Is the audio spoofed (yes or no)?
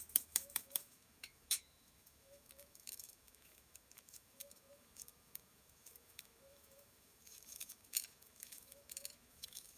yes